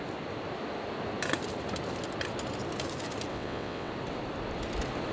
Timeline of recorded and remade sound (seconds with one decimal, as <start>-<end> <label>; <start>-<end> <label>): 0.0-3.3 recorded; 3.3-3.9 remade; 3.9-5.1 recorded